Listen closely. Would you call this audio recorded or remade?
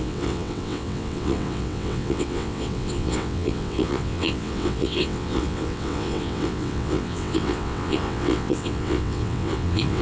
remade